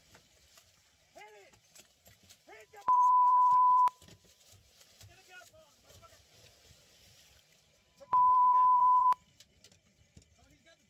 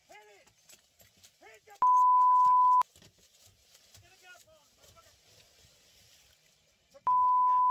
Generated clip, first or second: first